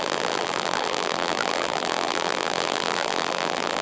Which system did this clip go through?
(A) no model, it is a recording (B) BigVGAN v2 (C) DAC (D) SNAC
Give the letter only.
B